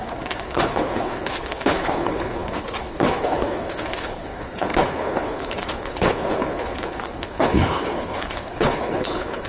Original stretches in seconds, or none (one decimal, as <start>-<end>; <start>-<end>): none